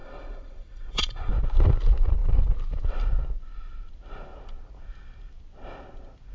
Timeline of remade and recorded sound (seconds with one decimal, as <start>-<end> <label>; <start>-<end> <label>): 0.0-1.3 remade; 1.3-6.3 recorded